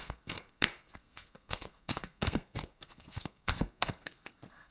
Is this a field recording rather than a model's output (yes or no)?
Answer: no